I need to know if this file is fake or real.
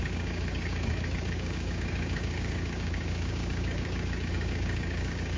fake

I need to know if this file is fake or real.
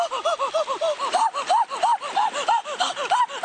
real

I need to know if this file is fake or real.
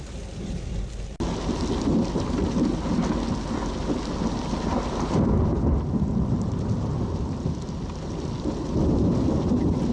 real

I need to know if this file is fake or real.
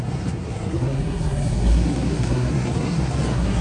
fake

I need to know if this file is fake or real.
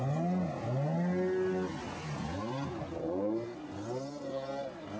real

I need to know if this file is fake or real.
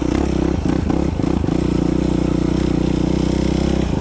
real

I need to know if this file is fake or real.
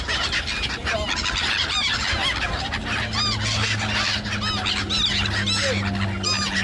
real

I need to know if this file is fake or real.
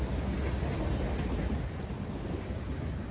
real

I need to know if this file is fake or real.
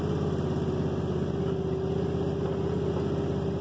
real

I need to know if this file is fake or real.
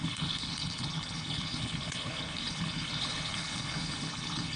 fake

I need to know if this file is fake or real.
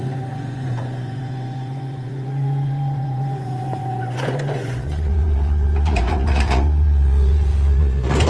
fake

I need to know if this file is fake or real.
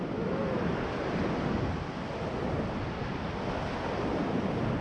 real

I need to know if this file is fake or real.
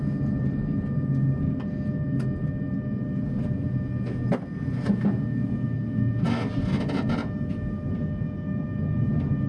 real